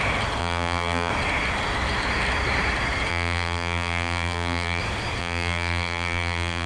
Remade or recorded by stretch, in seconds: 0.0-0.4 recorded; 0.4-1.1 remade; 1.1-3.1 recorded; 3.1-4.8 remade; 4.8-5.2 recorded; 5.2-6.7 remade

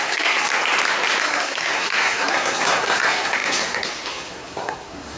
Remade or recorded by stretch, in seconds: 0.0-0.5 remade; 0.5-1.2 recorded; 1.2-5.2 remade

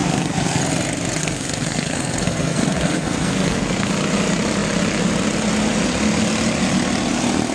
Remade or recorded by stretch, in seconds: 0.0-0.6 remade; 0.6-1.2 recorded; 1.2-3.9 remade; 3.9-7.5 recorded

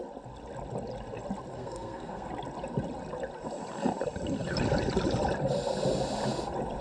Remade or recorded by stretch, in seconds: 0.0-1.5 recorded; 1.5-2.3 remade; 2.3-6.8 recorded

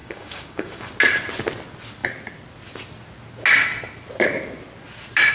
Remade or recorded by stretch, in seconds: 0.0-0.9 remade; 0.9-5.3 recorded

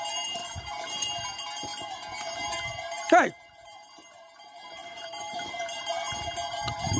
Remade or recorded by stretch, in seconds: 0.0-0.4 recorded; 0.4-1.1 remade; 1.1-1.7 recorded; 1.7-5.9 remade; 5.9-7.0 recorded

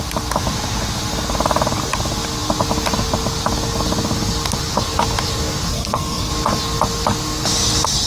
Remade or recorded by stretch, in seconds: 0.0-5.7 recorded; 5.7-6.3 remade; 6.3-8.1 recorded

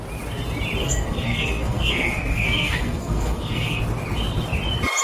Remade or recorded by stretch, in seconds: 0.0-0.8 recorded; 0.8-3.8 remade; 3.8-5.0 recorded